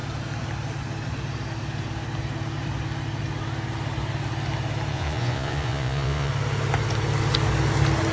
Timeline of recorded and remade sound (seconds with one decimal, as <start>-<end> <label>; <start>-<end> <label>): 0.0-4.9 recorded; 4.9-6.3 remade; 6.3-8.1 recorded

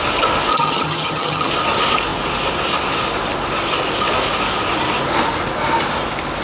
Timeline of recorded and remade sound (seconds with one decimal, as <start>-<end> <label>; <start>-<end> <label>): 0.0-0.5 recorded; 0.5-1.5 remade; 1.5-6.4 recorded

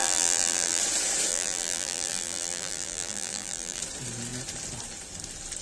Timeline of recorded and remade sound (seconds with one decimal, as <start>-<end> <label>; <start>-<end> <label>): 0.0-0.8 remade; 0.8-1.3 recorded; 1.3-3.8 remade; 3.8-5.6 recorded

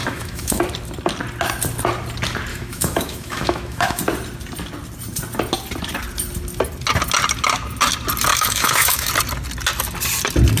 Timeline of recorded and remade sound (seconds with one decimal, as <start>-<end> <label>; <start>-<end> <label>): 0.0-0.6 remade; 0.6-2.5 recorded; 2.5-4.0 remade; 4.0-8.3 recorded; 8.3-9.1 remade; 9.1-10.6 recorded

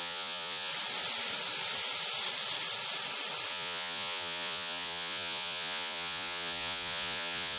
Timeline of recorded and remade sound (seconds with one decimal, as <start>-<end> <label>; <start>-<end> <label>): 0.0-0.7 remade; 0.7-3.5 recorded; 3.5-7.6 remade

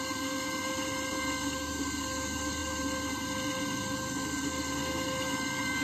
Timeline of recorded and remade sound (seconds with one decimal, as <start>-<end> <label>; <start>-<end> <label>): 0.0-5.8 recorded